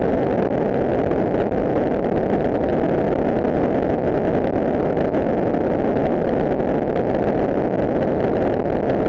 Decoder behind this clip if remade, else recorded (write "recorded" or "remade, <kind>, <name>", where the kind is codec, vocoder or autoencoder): recorded